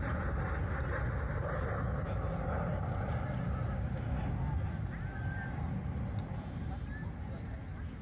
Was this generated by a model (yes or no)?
no